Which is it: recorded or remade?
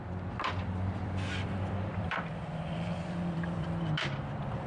remade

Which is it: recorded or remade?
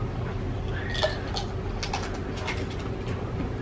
recorded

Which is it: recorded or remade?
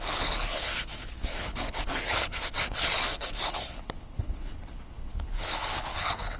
remade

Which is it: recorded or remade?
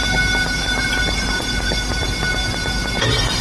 recorded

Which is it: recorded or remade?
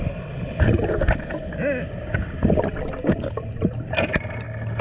recorded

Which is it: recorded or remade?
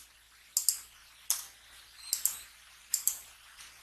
recorded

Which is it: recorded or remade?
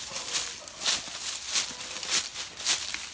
recorded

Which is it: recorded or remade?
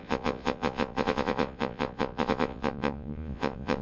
remade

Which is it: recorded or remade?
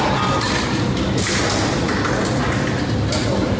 recorded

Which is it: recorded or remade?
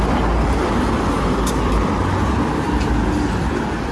recorded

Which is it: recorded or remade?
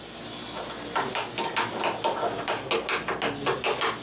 recorded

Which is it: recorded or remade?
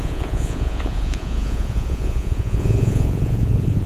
remade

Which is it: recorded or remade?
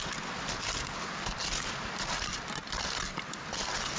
recorded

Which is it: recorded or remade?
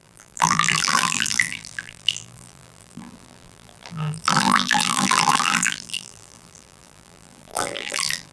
remade